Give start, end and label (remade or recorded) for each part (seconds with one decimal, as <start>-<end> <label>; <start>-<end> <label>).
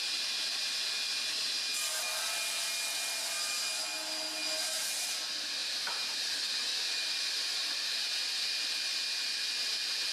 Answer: 0.0-5.6 recorded; 5.6-7.6 remade; 7.6-10.1 recorded